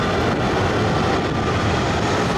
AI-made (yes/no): no